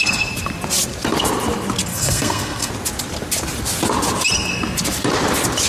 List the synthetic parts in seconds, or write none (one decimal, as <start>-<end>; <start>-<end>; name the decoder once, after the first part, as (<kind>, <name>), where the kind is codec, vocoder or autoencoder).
1.9-2.7 (codec, SNAC)